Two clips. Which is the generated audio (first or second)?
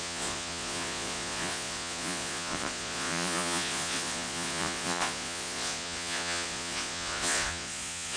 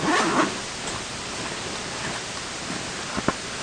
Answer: first